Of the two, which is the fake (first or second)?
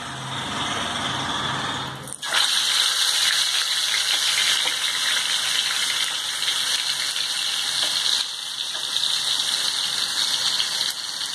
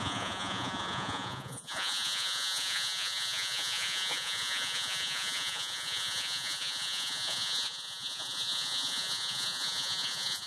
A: second